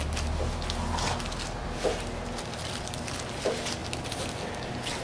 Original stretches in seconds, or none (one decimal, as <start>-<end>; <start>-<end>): 0.0-5.0